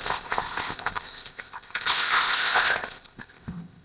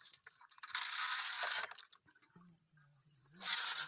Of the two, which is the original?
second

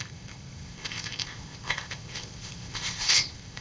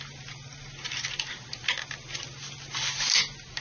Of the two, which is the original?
second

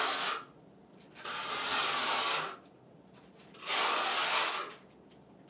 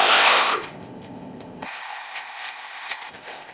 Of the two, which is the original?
first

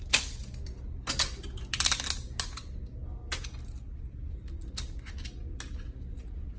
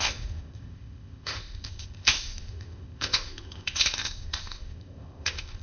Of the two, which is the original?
first